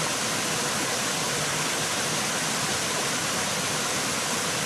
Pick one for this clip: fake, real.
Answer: real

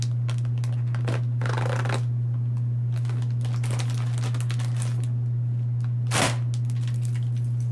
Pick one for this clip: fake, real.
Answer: real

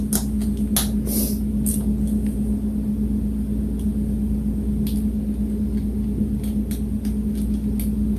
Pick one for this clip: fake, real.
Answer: real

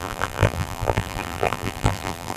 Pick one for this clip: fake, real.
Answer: fake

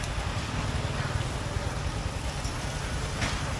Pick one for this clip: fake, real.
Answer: real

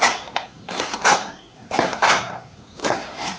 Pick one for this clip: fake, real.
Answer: fake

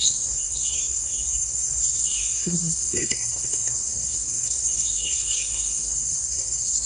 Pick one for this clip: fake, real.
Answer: fake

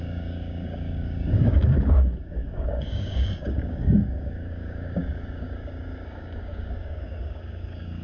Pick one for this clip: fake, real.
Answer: fake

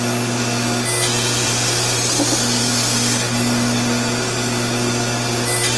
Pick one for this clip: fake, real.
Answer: real